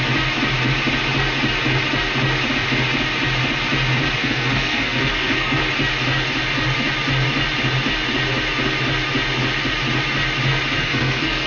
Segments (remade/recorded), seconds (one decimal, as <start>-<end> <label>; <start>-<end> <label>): 0.0-4.2 recorded; 4.2-5.6 remade; 5.6-10.8 recorded; 10.8-11.5 remade